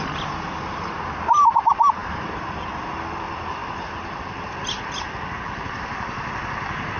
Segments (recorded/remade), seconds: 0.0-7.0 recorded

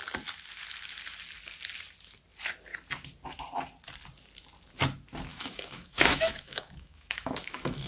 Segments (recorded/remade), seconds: 0.0-5.3 recorded; 5.3-7.9 remade